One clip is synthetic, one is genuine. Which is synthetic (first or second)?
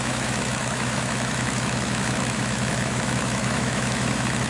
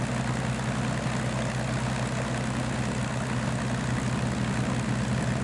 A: first